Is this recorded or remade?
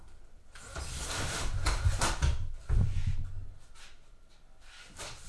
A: recorded